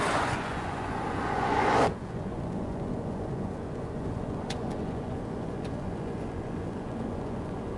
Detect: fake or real fake